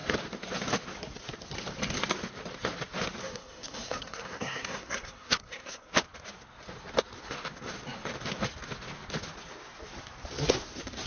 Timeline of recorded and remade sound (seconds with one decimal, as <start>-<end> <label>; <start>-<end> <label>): 0.0-3.2 recorded; 3.2-5.9 remade; 5.9-11.1 recorded